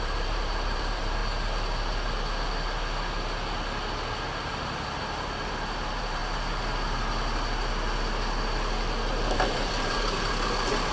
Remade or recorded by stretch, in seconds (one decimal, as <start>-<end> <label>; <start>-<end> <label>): 0.0-1.2 remade; 1.2-5.0 recorded; 5.0-6.2 remade; 6.2-9.3 recorded; 9.3-10.9 remade